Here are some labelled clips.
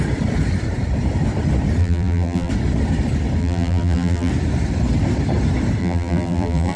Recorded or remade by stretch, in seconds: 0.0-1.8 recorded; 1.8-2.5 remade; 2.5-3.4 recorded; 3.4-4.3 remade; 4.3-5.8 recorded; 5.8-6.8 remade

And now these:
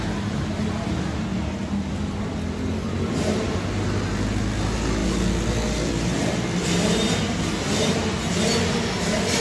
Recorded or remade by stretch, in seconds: 0.0-9.4 recorded